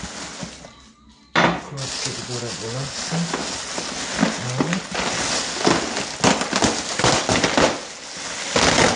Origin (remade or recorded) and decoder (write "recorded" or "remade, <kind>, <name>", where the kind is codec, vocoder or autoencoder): recorded